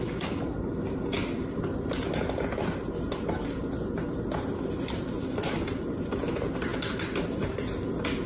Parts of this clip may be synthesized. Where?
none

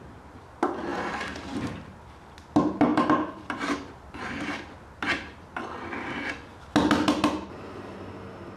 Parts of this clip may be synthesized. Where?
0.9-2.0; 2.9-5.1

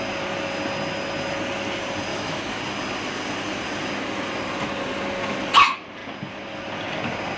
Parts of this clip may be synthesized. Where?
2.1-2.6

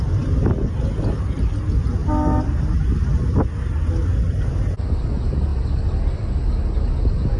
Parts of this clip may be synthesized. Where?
none

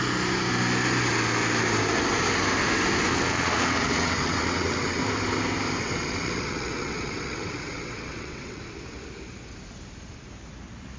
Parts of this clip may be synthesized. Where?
3.1-5.0; 5.8-8.6

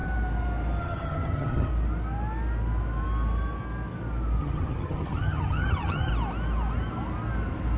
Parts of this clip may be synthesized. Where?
0.8-1.7; 4.4-6.1

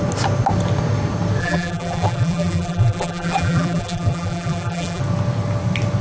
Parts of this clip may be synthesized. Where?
1.4-5.0